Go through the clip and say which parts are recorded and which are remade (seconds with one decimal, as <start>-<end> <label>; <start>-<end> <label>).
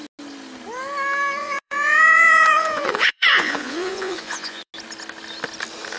0.0-1.4 recorded; 1.4-4.7 remade; 4.7-6.0 recorded